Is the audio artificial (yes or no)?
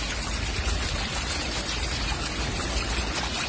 no